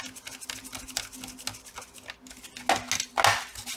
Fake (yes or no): no